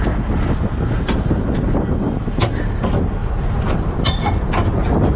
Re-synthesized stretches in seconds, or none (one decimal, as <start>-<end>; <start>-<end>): 3.2-4.5